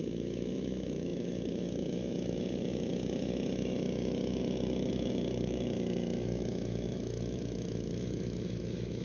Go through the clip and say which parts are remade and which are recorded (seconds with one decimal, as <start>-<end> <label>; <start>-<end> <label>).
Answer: 0.0-9.0 remade